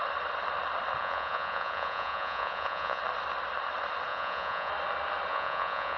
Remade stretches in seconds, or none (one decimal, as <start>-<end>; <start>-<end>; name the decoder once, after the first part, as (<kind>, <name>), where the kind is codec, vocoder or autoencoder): 1.0-3.0 (vocoder, Vocos); 4.1-4.7; 5.3-6.0